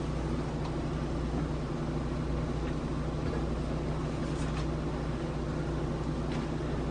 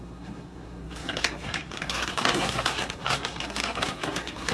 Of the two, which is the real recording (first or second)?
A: first